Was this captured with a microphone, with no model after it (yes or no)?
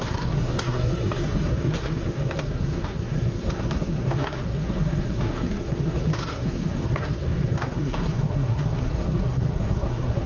no